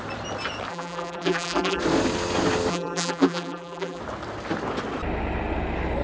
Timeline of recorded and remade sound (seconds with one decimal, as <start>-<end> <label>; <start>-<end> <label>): 0.0-0.7 recorded; 0.7-1.8 remade; 1.8-2.7 recorded; 2.7-4.0 remade; 4.0-6.0 recorded